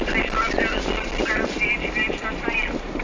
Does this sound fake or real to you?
real